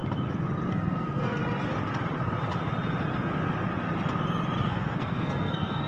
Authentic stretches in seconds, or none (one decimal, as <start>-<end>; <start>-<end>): 0.0-0.7; 1.4-4.6